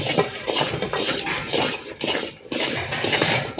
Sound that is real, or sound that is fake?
fake